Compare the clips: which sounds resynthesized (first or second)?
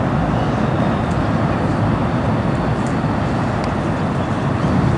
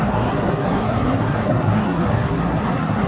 second